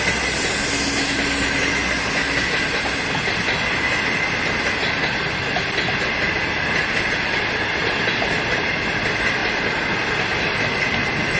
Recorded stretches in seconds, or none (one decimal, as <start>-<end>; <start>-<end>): 0.0-11.4